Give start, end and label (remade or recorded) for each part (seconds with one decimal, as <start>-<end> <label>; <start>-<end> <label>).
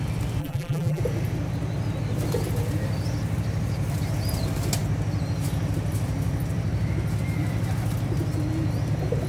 0.0-0.4 recorded; 0.4-1.0 remade; 1.0-9.3 recorded